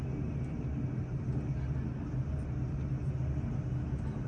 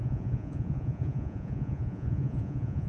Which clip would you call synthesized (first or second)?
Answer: second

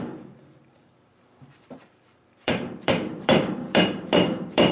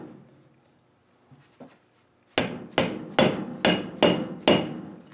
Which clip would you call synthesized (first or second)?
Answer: first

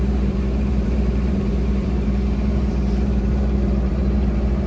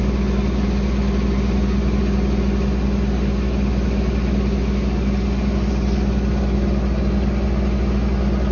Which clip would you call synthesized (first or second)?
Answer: first